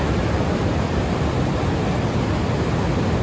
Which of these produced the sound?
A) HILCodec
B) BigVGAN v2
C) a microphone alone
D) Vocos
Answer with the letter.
C